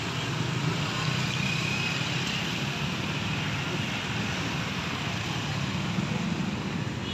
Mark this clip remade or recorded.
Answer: recorded